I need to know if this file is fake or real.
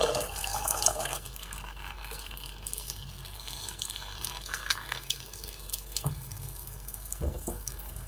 fake